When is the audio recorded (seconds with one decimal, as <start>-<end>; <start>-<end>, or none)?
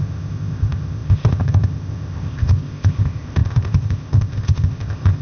none